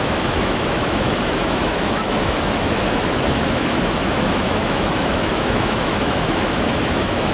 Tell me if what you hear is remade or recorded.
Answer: remade